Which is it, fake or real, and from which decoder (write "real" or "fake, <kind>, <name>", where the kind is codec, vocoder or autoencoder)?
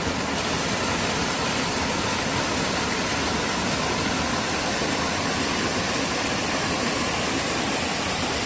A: real